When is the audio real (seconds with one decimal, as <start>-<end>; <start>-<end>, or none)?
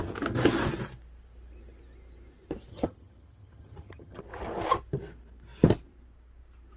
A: 0.0-2.7; 4.2-6.8